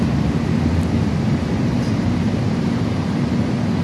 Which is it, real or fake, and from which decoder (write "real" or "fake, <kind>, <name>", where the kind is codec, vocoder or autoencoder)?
real